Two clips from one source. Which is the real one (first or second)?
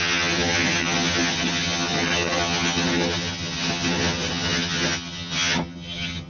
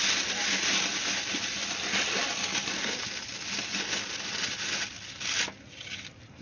second